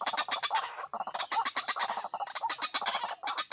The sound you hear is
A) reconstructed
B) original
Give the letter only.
B